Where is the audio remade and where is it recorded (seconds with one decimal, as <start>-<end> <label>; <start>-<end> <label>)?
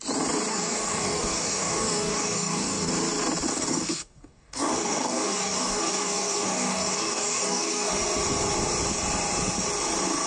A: 0.0-0.5 recorded; 0.5-2.9 remade; 2.9-3.5 recorded; 3.5-7.9 remade; 7.9-10.3 recorded